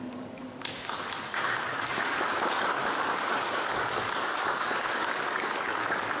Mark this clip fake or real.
fake